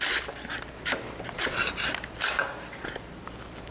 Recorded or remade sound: recorded